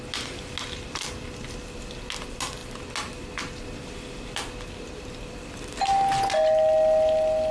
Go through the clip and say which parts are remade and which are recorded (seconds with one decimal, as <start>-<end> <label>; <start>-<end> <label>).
0.0-7.5 recorded